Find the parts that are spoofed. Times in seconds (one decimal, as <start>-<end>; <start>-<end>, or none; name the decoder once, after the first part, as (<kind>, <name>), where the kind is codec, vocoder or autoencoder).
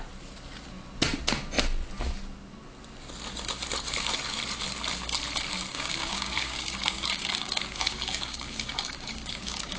5.7-9.8 (codec, DAC)